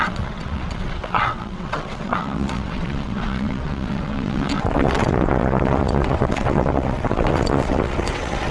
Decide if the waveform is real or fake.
fake